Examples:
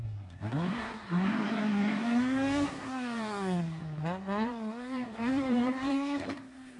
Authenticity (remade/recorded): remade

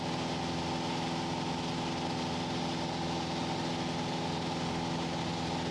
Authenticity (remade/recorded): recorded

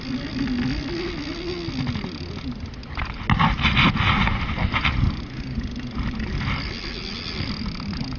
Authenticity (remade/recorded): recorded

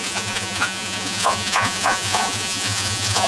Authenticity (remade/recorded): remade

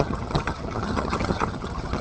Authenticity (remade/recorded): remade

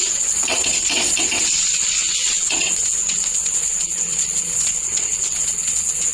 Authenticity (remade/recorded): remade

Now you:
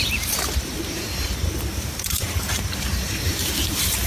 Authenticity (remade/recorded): remade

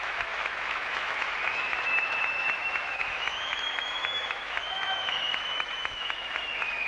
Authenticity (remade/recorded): remade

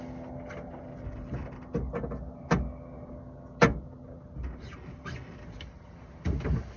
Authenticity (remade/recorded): recorded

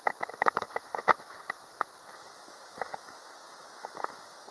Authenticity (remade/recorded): remade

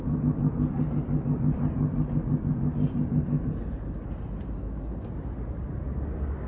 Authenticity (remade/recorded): recorded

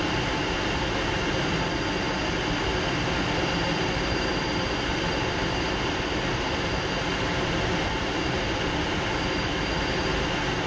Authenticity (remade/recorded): recorded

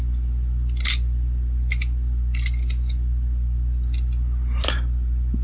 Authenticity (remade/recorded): recorded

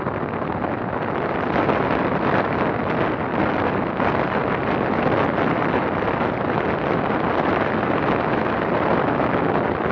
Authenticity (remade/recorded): recorded